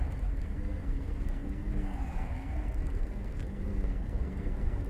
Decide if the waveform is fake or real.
fake